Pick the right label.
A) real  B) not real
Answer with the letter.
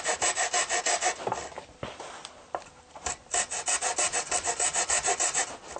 A